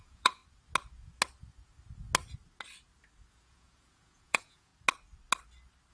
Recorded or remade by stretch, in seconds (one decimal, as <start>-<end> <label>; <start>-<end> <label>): 0.0-0.4 remade; 0.4-3.3 recorded; 3.3-4.7 remade; 4.7-5.9 recorded